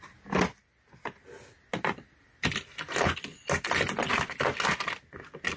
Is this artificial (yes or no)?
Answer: no